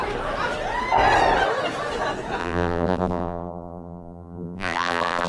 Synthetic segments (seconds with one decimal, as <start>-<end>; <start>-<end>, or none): 2.4-5.3